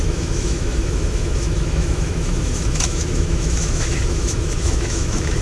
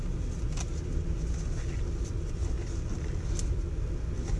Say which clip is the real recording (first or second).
second